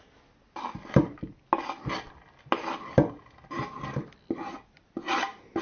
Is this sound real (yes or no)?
yes